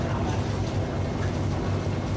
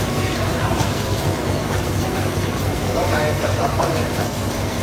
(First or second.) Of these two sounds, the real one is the first